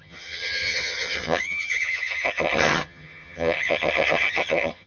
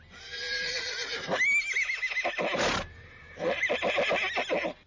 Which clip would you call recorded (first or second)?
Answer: second